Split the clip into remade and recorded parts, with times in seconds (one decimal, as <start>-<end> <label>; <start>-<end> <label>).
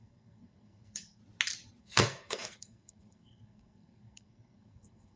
0.0-1.2 remade; 1.2-1.8 recorded; 1.8-5.2 remade